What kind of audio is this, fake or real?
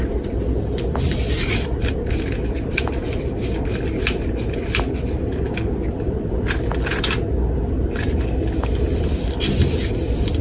real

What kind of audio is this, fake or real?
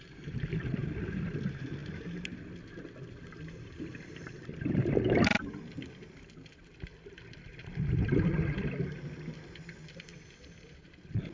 real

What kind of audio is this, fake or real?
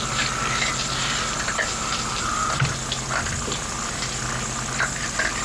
real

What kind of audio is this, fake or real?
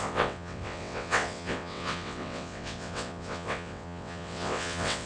fake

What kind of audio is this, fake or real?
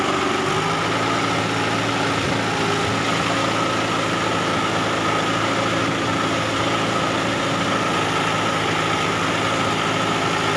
real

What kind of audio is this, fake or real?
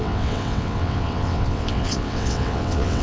fake